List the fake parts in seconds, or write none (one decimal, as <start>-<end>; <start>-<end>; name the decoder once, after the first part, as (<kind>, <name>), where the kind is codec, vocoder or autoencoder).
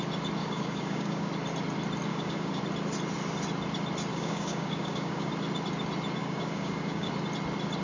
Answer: 0.4-1.3 (codec, DAC); 2.1-2.6; 4.1-5.3; 6.2-7.1